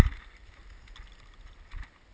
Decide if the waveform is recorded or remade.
recorded